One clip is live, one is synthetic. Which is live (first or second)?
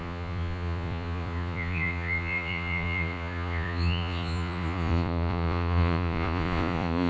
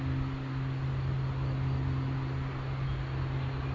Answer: second